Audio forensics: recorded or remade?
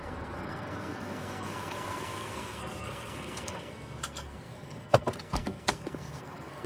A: remade